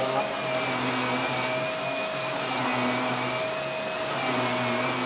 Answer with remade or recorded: recorded